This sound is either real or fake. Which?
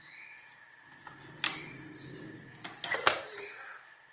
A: real